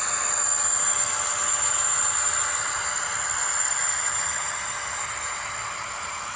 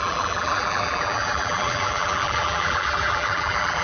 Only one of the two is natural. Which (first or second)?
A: first